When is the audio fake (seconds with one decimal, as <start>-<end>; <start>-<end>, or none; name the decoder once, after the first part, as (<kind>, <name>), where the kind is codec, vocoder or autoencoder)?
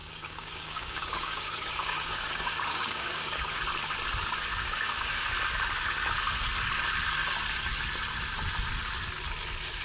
0.0-3.6 (codec, DAC); 4.5-5.3